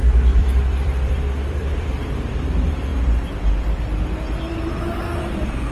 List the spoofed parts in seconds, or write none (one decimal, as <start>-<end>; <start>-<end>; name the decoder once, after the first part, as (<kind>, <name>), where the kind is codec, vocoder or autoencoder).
0.4-2.2 (vocoder, BigVGAN v2)